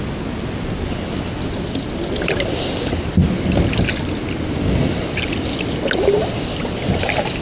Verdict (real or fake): real